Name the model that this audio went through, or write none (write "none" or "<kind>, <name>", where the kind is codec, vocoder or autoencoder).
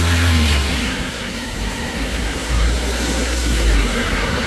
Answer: codec, SNAC